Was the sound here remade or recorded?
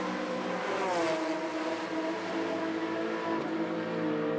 recorded